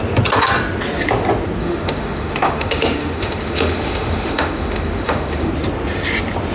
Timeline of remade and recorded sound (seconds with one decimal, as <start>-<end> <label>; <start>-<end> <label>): 0.0-1.6 recorded; 1.6-5.5 remade; 5.5-6.5 recorded